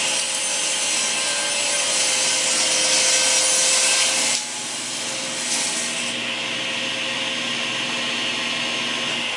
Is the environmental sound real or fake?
real